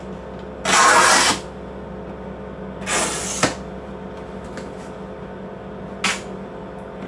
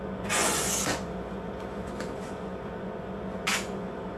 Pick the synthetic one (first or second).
second